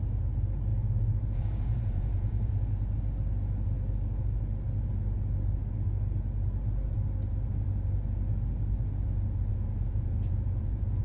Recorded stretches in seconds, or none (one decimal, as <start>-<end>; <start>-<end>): 0.0-0.7; 2.6-9.5